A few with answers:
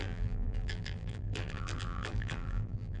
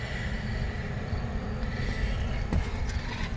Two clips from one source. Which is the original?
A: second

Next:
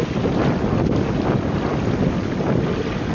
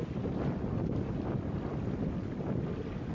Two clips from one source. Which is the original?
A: first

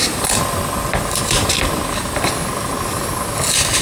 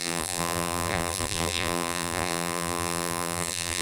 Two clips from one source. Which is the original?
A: first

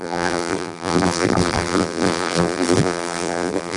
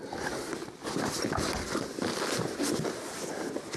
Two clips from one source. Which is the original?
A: second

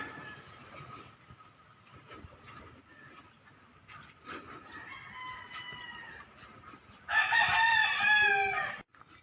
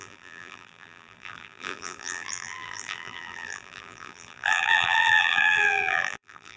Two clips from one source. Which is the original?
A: first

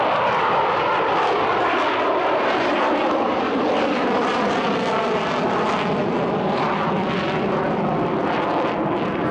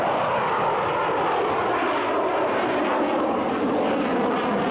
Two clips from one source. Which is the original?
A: second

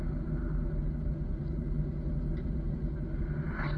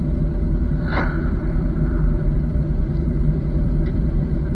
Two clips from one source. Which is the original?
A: first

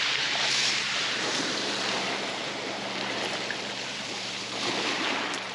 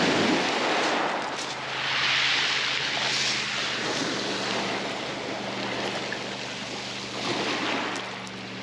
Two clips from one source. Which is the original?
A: second